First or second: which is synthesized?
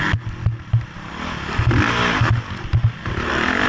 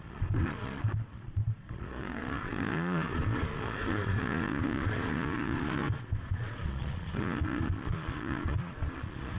second